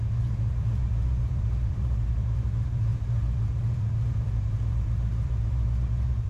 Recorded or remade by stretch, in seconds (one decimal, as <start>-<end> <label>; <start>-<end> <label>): 0.0-6.3 remade